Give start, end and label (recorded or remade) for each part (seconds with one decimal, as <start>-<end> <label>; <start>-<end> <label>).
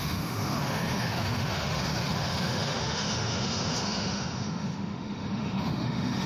0.0-6.3 remade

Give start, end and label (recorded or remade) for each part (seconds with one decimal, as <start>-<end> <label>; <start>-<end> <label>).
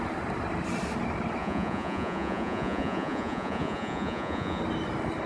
0.0-1.4 recorded; 1.4-4.6 remade; 4.6-5.3 recorded